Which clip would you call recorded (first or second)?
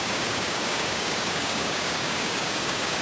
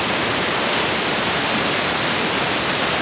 second